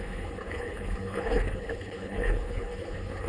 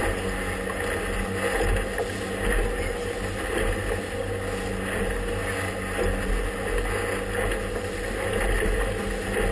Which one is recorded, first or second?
second